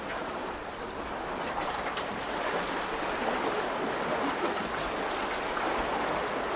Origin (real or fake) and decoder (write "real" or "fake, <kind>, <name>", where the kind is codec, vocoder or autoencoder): real